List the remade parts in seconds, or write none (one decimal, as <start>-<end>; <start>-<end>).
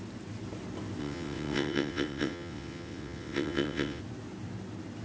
1.0-4.0